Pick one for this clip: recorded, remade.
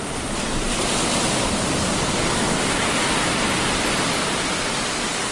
recorded